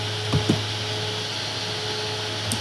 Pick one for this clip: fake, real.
real